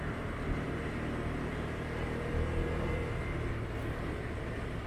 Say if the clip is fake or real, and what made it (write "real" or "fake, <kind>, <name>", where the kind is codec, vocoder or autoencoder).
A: real